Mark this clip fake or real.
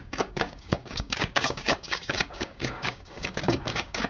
fake